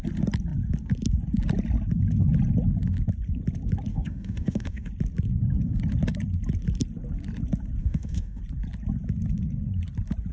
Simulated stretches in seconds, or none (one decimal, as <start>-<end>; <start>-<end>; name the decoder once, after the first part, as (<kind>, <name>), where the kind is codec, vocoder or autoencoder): 3.9-4.9 (autoencoder, DAC-VAE); 7.8-8.4